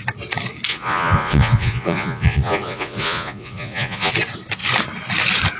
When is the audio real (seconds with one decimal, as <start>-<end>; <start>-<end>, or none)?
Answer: 0.0-0.7; 4.1-5.6